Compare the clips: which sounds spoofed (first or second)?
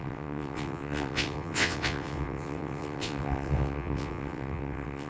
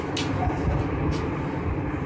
first